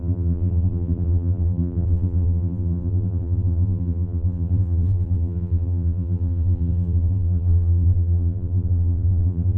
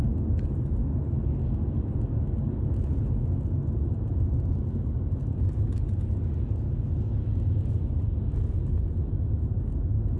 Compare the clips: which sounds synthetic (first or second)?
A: first